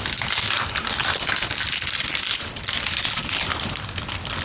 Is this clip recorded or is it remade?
recorded